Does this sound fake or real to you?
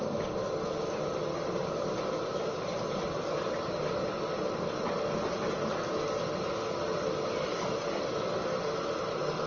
real